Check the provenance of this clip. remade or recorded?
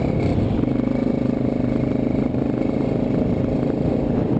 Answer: recorded